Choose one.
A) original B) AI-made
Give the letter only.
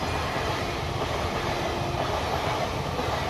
A